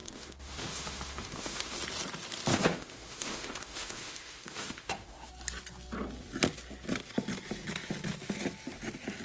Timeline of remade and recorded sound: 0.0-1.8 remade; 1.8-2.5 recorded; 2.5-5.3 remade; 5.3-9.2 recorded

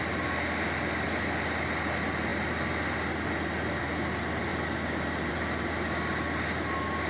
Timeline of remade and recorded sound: 0.0-7.1 recorded

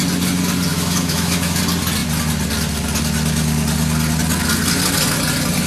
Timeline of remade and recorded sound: 0.0-0.7 recorded; 0.7-1.6 remade; 1.6-5.7 recorded

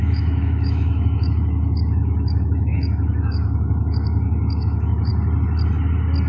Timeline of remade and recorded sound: 0.0-5.1 remade; 5.1-6.3 recorded